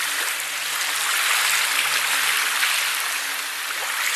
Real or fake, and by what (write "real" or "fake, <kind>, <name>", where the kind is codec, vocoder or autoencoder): real